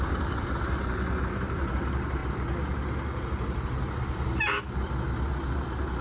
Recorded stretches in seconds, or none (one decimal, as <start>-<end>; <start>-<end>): 0.0-6.0